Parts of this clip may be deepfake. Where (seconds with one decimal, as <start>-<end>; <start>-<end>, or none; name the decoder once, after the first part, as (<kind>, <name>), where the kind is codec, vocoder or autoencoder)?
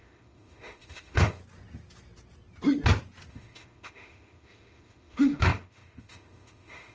0.0-1.4 (autoencoder, DAC-VAE); 3.3-6.9